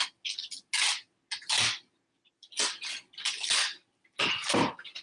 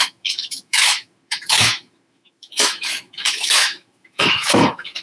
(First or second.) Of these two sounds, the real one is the first